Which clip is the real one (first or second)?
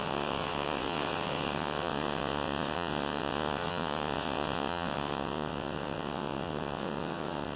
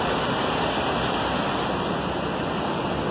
second